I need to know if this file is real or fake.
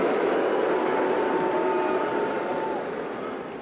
real